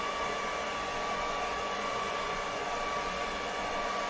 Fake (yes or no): yes